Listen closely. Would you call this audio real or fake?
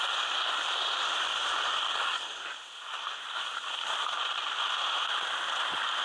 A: real